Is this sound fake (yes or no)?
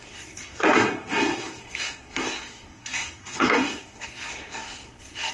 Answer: yes